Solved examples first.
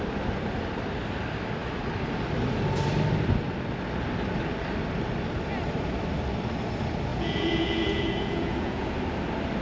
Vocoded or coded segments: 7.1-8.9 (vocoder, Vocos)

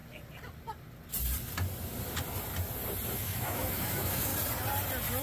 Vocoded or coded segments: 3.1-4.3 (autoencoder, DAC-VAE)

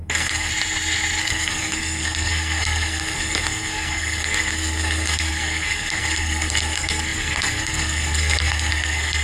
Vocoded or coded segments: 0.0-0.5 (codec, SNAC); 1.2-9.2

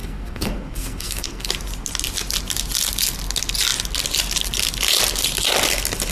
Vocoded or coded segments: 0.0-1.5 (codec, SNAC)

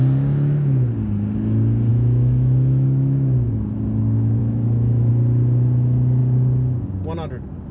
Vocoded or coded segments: 1.9-3.5 (autoencoder, DAC-VAE); 4.4-5.1

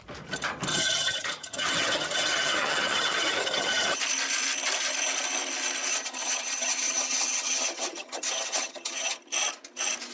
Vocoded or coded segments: 0.7-4.0 (vocoder, HiFi-GAN); 5.9-9.2

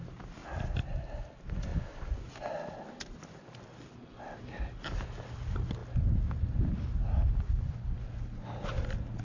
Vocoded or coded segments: none